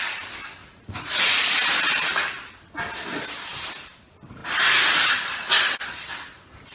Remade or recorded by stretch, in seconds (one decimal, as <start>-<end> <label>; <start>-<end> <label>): 0.0-0.6 recorded; 0.6-1.2 remade; 1.2-6.7 recorded

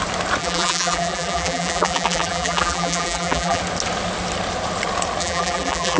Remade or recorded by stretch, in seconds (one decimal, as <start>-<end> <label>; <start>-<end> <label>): 0.0-0.4 recorded; 0.4-3.6 remade; 3.6-5.2 recorded; 5.2-6.0 remade

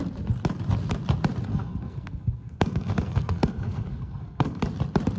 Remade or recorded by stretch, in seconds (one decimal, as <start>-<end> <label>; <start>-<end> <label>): 0.0-1.5 recorded; 1.5-4.6 remade; 4.6-5.2 recorded

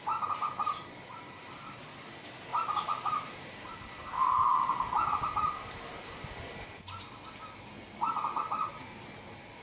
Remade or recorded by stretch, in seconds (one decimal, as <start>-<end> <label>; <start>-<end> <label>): 0.0-9.6 recorded

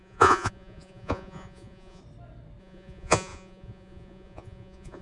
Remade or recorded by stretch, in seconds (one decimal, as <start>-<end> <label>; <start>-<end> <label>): 0.0-2.0 remade; 2.0-2.6 recorded; 2.6-5.0 remade